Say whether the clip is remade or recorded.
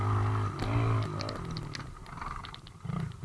recorded